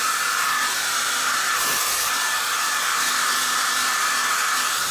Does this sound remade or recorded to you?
recorded